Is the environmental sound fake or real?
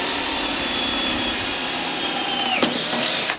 fake